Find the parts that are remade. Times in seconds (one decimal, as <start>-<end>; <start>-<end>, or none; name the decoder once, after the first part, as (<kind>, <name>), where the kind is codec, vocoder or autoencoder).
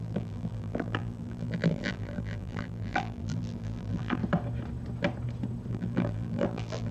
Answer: 0.0-4.2 (vocoder, BigVGAN v2); 5.7-6.9